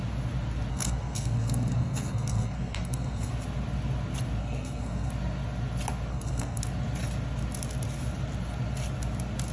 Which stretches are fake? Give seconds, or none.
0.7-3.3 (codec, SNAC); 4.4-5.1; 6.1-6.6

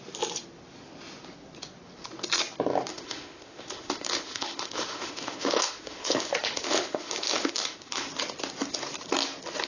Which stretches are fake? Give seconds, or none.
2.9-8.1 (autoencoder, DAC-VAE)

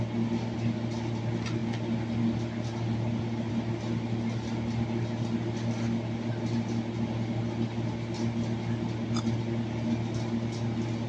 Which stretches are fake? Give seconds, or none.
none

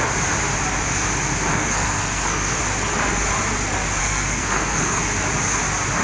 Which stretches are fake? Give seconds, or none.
1.5-2.6 (codec, SNAC); 4.0-5.0